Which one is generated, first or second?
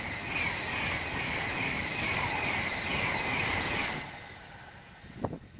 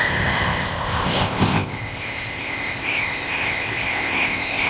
second